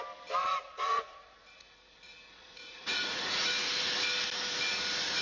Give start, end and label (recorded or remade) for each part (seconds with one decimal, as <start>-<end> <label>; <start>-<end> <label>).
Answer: 0.0-0.4 recorded; 0.4-3.5 remade; 3.5-5.2 recorded